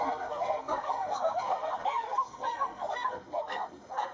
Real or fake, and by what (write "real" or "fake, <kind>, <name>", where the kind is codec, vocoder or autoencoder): fake, codec, SNAC